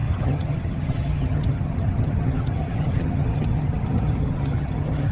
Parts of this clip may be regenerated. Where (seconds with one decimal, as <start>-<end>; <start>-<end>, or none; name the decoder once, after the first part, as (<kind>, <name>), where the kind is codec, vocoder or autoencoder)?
0.0-5.1 (vocoder, HiFi-GAN)